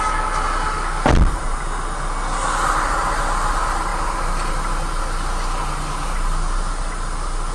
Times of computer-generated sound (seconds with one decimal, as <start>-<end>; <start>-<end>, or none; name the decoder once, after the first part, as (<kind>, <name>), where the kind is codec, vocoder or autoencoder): none